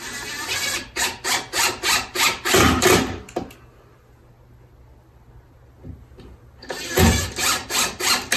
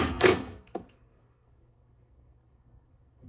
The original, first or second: first